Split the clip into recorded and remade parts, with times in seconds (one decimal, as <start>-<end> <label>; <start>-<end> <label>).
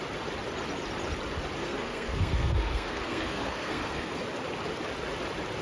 0.0-1.6 recorded; 1.6-4.2 remade; 4.2-5.6 recorded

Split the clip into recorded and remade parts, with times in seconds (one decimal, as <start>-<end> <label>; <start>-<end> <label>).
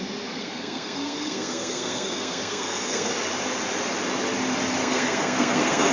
0.0-0.4 recorded; 0.4-3.1 remade; 3.1-4.8 recorded; 4.8-5.9 remade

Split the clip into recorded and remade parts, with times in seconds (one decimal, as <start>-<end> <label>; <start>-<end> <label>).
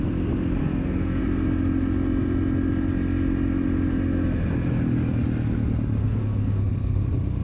0.0-0.6 recorded; 0.6-1.2 remade; 1.2-6.0 recorded; 6.0-7.0 remade; 7.0-7.4 recorded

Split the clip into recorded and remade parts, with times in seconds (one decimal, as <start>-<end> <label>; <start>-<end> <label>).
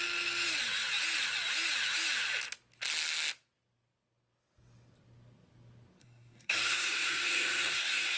0.0-6.0 recorded; 6.0-8.2 remade